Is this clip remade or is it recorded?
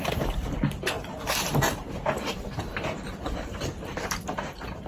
remade